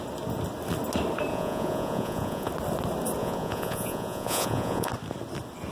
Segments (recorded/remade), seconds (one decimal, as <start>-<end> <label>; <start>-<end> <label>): 0.0-1.3 recorded; 1.3-2.5 remade; 2.5-3.2 recorded; 3.2-4.9 remade; 4.9-5.7 recorded